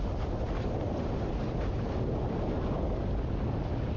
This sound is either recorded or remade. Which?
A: recorded